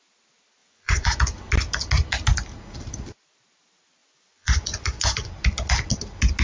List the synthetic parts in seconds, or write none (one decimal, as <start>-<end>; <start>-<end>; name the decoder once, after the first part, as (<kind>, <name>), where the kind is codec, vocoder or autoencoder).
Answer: 0.6-1.2 (vocoder, Vocos); 4.0-5.3